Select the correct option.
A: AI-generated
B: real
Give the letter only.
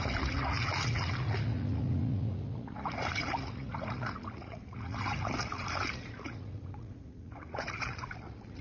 A